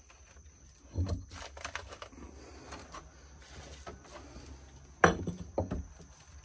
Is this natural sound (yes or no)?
yes